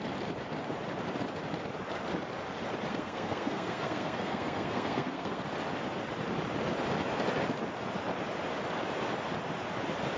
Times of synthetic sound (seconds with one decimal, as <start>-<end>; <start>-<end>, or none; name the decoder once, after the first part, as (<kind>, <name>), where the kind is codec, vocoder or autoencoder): 2.9-5.4 (codec, SNAC)